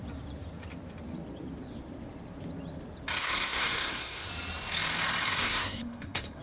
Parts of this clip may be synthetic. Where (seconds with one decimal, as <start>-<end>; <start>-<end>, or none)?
3.2-4.3; 5.4-6.4